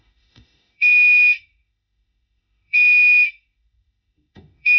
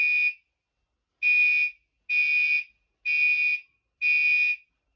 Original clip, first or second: second